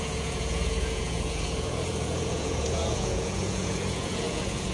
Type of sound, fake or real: fake